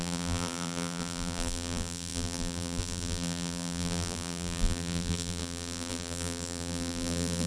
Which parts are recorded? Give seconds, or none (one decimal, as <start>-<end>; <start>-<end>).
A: none